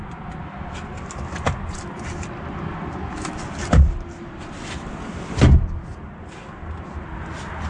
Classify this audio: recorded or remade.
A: recorded